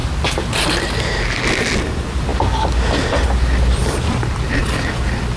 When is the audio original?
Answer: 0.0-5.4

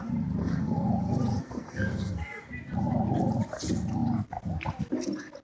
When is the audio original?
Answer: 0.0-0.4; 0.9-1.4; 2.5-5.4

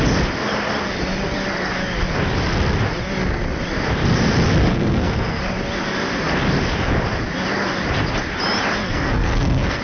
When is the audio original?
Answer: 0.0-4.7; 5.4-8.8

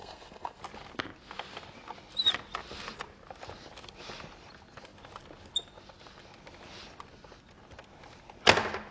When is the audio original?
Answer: 0.6-8.9